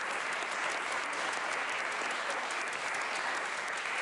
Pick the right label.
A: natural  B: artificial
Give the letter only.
A